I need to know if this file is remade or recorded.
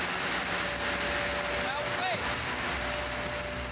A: recorded